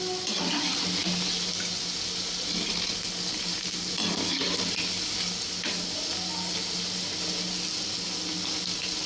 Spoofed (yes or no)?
no